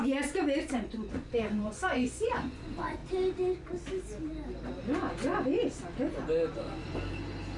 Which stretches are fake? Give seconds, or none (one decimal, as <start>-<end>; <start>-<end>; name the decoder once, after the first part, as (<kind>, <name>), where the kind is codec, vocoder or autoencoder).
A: 0.0-3.0 (vocoder, Vocos); 4.8-5.3